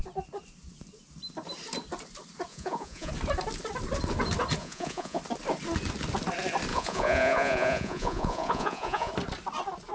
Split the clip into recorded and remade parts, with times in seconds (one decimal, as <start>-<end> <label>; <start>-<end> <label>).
0.0-2.5 recorded; 2.5-3.1 remade; 3.1-4.6 recorded; 4.6-5.2 remade; 5.2-6.7 recorded; 6.7-9.1 remade; 9.1-9.9 recorded

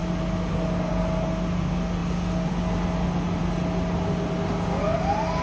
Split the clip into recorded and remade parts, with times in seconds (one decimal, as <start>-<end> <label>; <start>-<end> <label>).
0.0-5.4 recorded

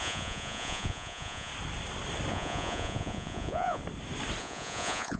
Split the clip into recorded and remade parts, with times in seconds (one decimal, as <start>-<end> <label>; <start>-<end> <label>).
0.0-1.5 remade; 1.5-2.3 recorded; 2.3-3.8 remade; 3.8-4.4 recorded; 4.4-5.2 remade

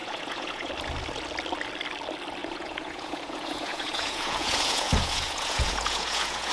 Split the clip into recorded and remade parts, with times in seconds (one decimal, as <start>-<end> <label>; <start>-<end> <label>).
0.0-0.7 remade; 0.7-2.4 recorded; 2.4-6.5 remade

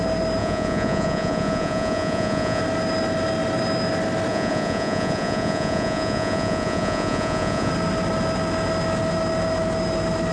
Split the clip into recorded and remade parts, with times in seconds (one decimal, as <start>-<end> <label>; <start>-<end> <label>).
0.0-0.4 recorded; 0.4-2.6 remade; 2.6-4.3 recorded; 4.3-7.7 remade; 7.7-10.3 recorded

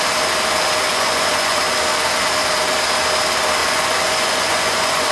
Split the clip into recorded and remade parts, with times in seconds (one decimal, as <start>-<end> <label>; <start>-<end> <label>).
0.0-0.9 recorded; 0.9-1.6 remade; 1.6-3.6 recorded; 3.6-5.1 remade

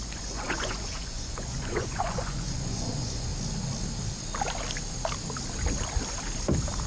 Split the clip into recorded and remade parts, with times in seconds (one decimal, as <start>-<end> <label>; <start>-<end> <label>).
0.0-3.3 remade; 3.3-6.9 recorded